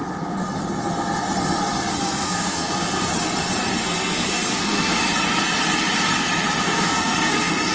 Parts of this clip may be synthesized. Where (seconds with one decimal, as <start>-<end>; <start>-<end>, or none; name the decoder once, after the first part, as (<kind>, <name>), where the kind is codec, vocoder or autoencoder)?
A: 1.9-3.1 (codec, SNAC); 3.8-5.0; 6.6-7.7